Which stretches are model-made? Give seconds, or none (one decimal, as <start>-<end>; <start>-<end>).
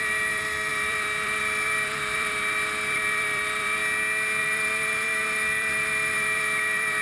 0.0-3.8; 4.4-7.0